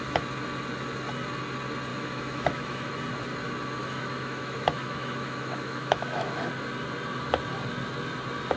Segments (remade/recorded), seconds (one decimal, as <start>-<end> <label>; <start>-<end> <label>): 0.0-1.9 recorded; 1.9-2.9 remade; 2.9-3.8 recorded; 3.8-6.4 remade; 6.4-8.6 recorded